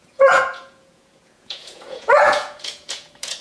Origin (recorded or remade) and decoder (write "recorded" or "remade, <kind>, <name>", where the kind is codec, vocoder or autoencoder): remade, vocoder, Vocos